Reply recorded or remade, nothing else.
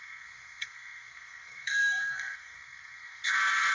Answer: remade